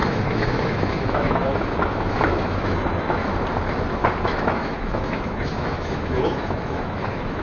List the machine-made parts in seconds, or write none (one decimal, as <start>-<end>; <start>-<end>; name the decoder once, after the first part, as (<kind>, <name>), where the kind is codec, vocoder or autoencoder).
0.0-3.2 (autoencoder, DAC-VAE); 4.2-7.4